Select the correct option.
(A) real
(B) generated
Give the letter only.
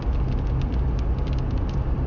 A